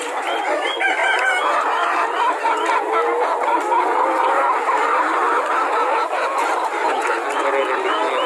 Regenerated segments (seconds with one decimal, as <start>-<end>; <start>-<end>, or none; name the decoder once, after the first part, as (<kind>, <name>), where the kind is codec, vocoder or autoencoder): none